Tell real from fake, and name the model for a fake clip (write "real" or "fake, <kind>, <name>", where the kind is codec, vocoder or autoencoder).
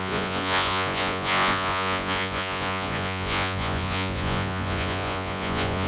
fake, vocoder, Vocos